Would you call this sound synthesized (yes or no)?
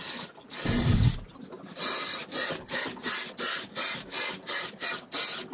no